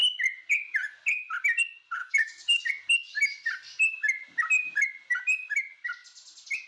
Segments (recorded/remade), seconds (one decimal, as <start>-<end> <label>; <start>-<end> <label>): 0.0-2.0 recorded; 2.0-2.7 remade; 2.7-6.7 recorded